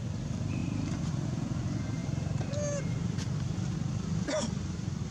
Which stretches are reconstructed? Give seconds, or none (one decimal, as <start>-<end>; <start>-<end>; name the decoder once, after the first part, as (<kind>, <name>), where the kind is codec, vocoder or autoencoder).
0.6-1.1 (vocoder, BigVGAN v2)